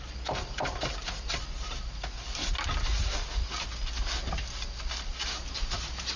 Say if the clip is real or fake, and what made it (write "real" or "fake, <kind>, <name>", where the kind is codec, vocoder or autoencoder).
real